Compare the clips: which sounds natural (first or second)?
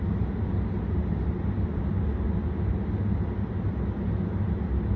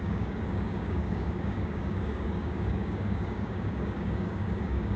first